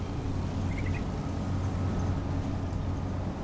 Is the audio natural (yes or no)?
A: yes